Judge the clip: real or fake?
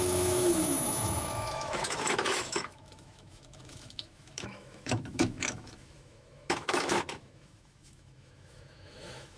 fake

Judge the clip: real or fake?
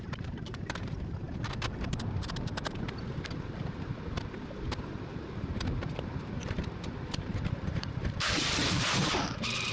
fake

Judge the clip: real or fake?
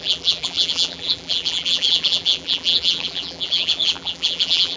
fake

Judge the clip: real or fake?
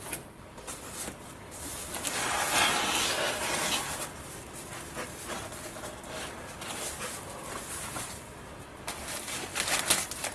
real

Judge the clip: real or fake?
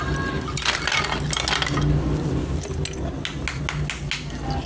real